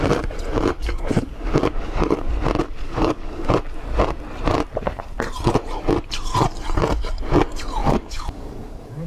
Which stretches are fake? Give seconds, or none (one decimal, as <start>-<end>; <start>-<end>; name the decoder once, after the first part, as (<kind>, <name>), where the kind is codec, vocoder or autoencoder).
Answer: 0.7-2.2 (codec, DAC); 2.8-3.5; 7.8-9.1